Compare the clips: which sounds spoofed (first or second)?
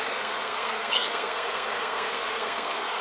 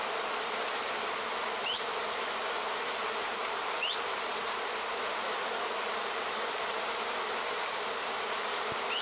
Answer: first